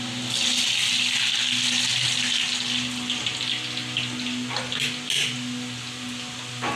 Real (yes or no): yes